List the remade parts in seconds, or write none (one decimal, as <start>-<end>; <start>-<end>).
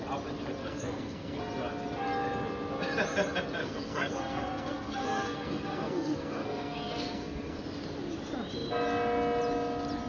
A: 0.6-1.4; 3.6-7.6